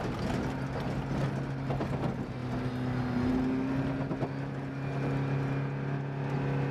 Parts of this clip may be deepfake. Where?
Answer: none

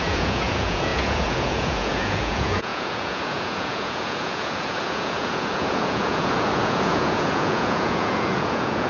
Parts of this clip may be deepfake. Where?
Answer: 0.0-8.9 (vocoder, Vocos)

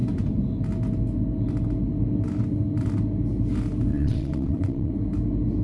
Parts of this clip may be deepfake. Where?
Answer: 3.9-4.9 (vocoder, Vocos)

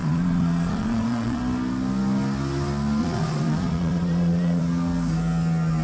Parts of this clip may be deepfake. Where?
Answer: 0.0-1.4 (vocoder, Vocos); 3.0-4.6

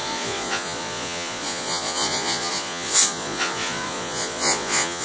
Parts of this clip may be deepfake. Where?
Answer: 0.0-5.0 (vocoder, Vocos)

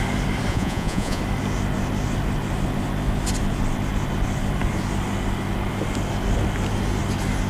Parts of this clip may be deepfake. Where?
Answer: 0.5-1.2 (vocoder, Vocos)

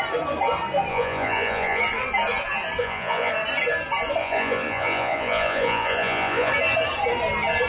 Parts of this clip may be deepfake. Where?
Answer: 0.9-1.8 (vocoder, Vocos); 2.8-3.3; 4.2-6.5

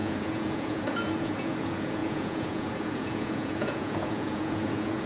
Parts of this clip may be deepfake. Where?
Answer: 0.0-5.1 (vocoder, Vocos)